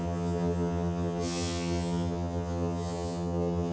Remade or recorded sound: remade